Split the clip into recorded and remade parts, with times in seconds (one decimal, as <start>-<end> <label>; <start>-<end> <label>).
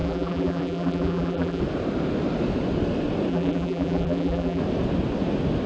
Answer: 0.0-1.6 remade; 1.6-3.3 recorded; 3.3-4.6 remade; 4.6-5.7 recorded